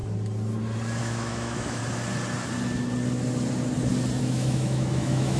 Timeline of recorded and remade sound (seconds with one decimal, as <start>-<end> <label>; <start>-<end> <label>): 0.0-1.0 recorded; 1.0-1.8 remade; 1.8-4.2 recorded; 4.2-5.4 remade